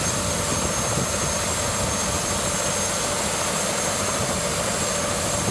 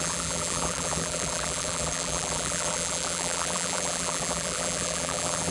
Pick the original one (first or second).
first